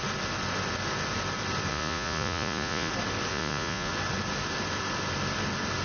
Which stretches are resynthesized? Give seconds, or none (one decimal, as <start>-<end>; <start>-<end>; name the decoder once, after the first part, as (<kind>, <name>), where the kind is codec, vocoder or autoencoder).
1.7-2.9 (vocoder, Vocos); 3.3-3.9